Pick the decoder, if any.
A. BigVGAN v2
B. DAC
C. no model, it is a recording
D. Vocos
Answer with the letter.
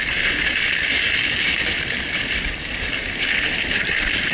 C